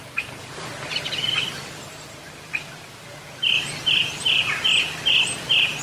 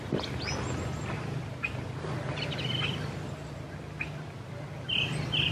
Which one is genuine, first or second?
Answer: second